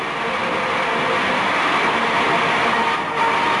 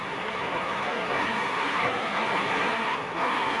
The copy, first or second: second